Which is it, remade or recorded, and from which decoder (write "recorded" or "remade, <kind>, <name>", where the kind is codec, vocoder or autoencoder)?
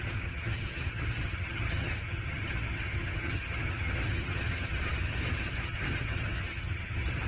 remade, vocoder, HiFi-GAN